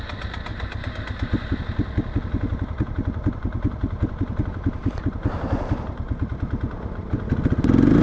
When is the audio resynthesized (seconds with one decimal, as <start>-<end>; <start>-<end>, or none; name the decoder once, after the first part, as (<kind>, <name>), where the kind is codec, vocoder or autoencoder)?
0.5-1.6 (vocoder, BigVGAN v2); 2.5-6.3